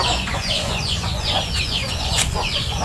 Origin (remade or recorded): remade